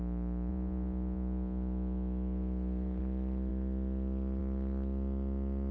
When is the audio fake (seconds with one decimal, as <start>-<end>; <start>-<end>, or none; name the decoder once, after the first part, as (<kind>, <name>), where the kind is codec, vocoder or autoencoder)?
0.5-3.0 (vocoder, Vocos)